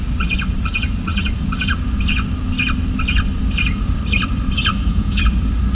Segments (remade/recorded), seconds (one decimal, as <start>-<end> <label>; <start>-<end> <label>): 0.0-4.7 recorded; 4.7-5.2 remade; 5.2-5.7 recorded